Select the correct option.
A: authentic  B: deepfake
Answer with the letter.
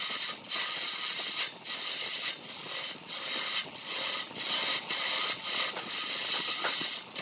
A